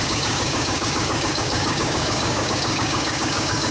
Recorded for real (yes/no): no